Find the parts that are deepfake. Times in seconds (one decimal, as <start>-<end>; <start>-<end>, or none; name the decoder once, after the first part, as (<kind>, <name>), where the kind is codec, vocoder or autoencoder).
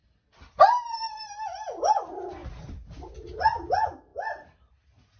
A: 0.0-1.4 (vocoder, BigVGAN v2); 4.1-4.7